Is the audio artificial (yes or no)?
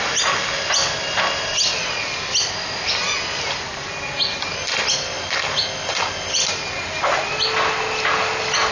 no